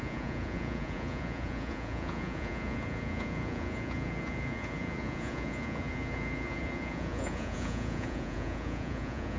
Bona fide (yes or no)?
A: no